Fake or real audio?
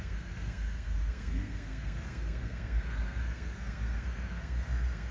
fake